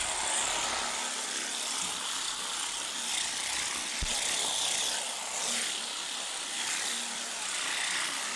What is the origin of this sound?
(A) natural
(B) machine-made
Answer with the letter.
A